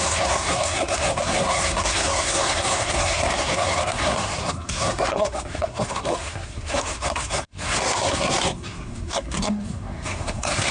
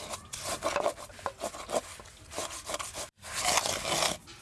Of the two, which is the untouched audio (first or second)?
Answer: second